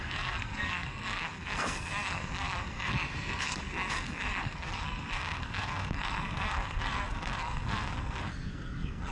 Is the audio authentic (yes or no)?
no